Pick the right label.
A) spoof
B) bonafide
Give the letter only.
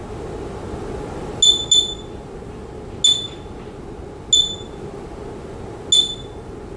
B